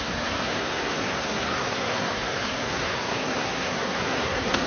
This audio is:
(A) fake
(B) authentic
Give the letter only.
A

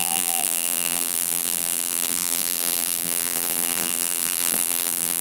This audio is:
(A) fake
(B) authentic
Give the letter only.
A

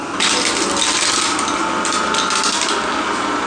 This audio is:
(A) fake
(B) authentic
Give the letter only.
B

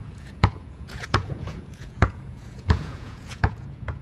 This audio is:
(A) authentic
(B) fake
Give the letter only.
B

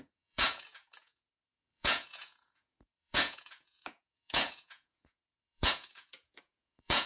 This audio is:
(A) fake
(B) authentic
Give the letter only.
A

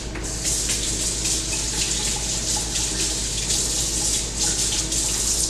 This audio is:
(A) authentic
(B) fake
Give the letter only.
A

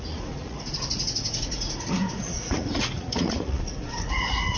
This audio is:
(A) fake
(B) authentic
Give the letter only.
A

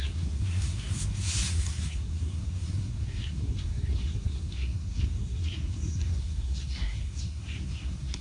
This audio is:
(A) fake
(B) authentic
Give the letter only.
A